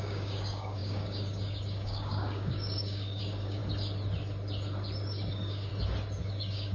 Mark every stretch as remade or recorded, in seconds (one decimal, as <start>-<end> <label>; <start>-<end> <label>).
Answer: 0.0-3.6 remade; 3.6-5.3 recorded; 5.3-5.7 remade; 5.7-6.2 recorded; 6.2-6.7 remade